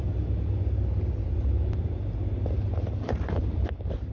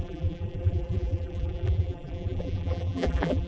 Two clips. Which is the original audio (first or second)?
first